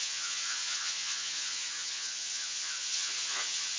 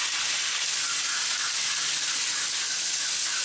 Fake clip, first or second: first